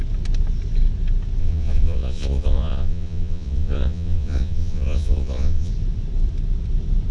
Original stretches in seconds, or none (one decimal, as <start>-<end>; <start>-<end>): 0.0-1.4; 5.7-7.1